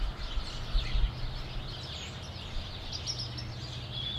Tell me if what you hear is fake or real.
real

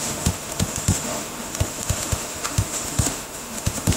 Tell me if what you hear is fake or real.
fake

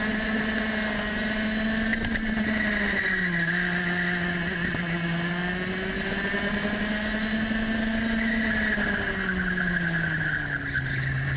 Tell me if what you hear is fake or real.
real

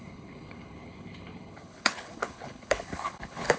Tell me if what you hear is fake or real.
fake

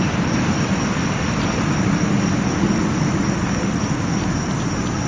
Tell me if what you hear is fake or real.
real